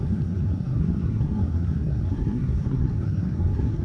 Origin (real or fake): fake